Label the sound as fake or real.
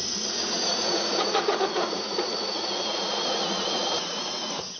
fake